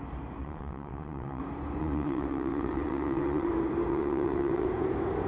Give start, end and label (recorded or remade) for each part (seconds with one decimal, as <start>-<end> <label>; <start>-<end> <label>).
0.0-0.4 recorded; 0.4-1.4 remade; 1.4-1.8 recorded; 1.8-3.5 remade; 3.5-3.9 recorded; 3.9-4.7 remade; 4.7-5.3 recorded